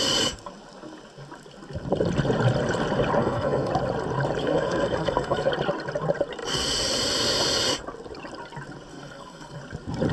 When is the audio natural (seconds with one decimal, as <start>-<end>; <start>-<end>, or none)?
0.0-3.2; 3.7-4.4; 5.5-8.9; 9.6-10.1